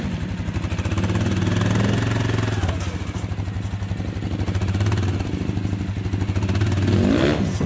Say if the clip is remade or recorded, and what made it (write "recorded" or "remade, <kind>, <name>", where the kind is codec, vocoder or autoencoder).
recorded